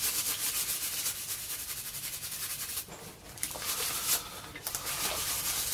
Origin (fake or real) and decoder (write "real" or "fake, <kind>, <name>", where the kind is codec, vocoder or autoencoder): real